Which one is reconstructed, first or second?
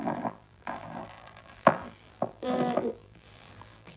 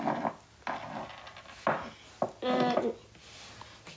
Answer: first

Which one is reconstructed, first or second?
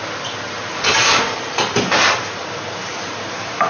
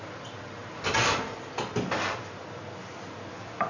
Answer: first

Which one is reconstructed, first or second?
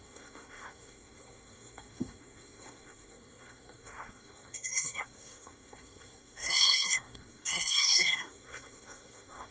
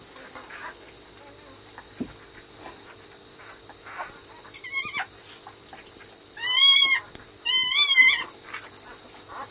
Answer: first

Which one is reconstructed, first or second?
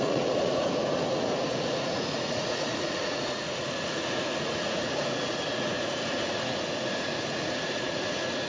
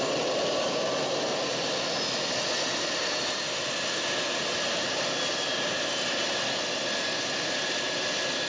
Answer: first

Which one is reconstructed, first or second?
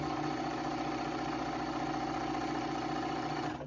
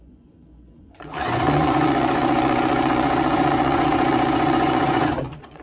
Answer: second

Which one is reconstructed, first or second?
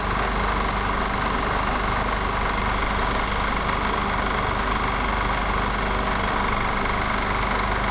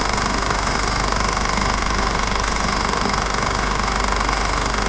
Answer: second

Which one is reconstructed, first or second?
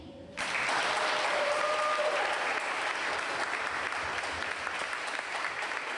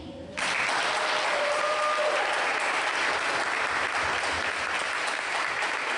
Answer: first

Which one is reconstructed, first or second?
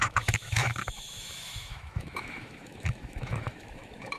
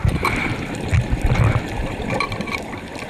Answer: first